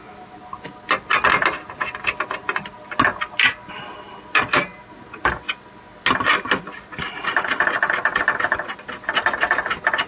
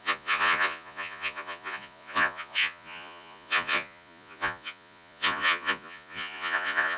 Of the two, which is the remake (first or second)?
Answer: second